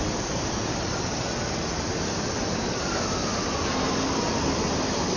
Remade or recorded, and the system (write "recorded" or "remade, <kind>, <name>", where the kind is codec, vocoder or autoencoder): recorded